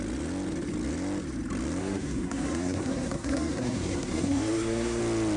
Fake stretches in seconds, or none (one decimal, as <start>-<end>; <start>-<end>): 1.8-5.0